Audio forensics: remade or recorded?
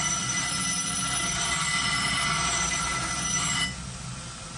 recorded